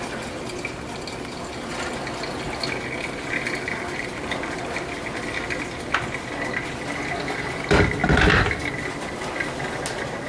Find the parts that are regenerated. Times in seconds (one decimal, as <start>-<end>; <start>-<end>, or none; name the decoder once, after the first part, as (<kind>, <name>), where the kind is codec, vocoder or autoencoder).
none